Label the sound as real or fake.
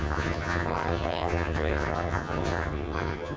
fake